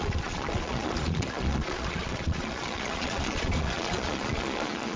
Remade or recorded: remade